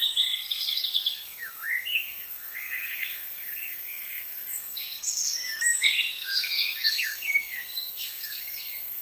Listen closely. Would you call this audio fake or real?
fake